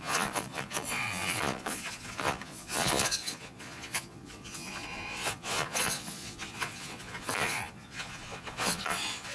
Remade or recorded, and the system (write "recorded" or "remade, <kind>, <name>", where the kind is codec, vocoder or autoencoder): remade, vocoder, Vocos